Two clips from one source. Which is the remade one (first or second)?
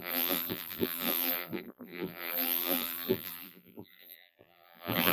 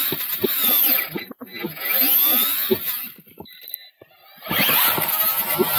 first